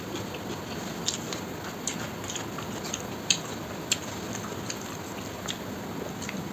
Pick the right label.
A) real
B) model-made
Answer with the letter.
A